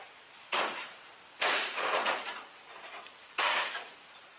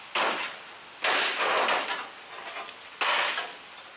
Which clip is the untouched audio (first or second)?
second